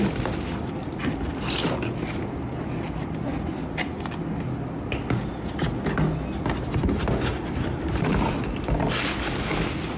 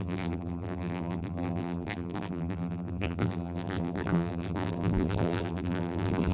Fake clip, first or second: second